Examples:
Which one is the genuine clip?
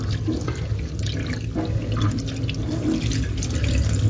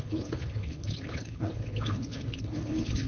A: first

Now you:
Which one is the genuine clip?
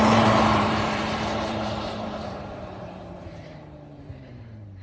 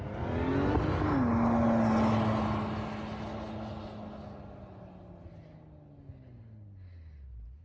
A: second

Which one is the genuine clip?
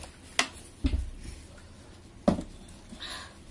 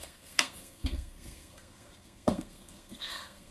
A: first